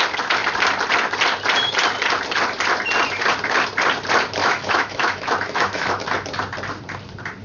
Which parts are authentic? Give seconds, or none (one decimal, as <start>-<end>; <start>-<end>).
0.0-4.4; 6.0-7.4